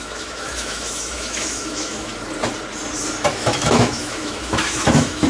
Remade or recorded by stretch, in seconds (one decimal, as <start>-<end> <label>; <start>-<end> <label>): 0.0-2.1 remade; 2.1-3.3 recorded; 3.3-5.3 remade